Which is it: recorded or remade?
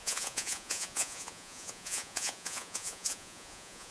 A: remade